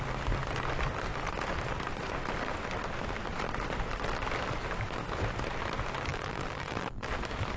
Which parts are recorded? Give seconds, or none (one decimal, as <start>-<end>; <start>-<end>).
0.0-6.1; 7.1-7.6